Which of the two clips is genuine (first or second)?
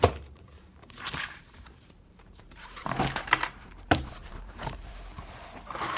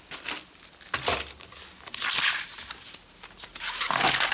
second